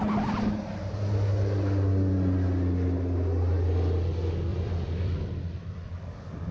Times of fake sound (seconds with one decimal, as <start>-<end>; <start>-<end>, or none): 4.5-5.2